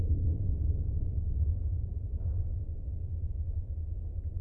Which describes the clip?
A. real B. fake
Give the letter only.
B